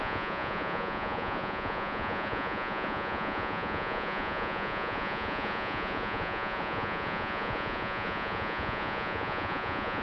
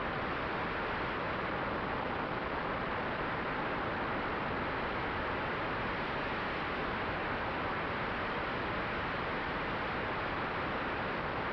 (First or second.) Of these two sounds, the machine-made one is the first